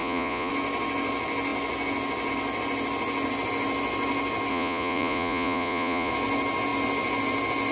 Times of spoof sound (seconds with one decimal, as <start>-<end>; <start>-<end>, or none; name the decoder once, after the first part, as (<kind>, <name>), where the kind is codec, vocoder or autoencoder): 0.0-0.5 (vocoder, Vocos); 4.5-6.1